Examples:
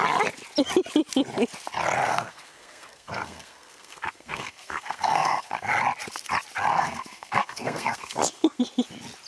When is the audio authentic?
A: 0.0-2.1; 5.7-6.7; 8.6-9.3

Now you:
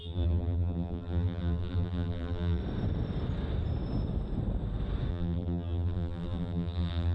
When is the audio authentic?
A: 2.6-5.1